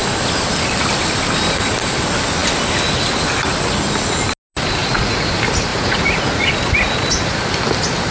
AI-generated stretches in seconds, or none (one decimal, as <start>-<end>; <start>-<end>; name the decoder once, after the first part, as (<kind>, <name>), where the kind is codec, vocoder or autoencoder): 4.8-5.3 (vocoder, Vocos); 5.7-6.5